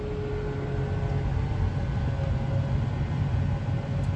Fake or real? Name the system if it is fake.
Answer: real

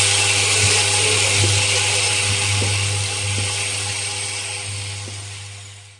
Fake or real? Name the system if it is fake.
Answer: real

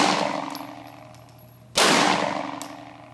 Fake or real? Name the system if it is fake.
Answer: real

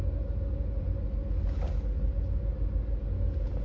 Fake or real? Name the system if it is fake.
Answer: real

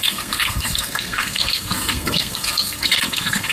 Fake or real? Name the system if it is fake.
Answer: fake, codec, SNAC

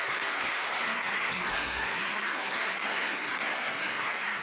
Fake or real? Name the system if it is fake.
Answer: fake, codec, SNAC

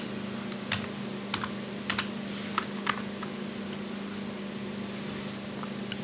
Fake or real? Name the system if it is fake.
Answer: real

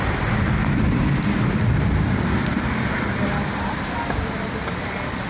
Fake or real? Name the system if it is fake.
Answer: real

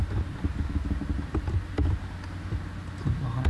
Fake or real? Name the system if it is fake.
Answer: real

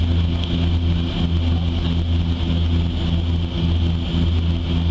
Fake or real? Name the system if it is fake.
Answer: real